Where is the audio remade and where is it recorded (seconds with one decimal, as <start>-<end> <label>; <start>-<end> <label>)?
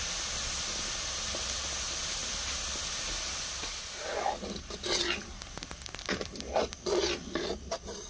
0.0-8.1 recorded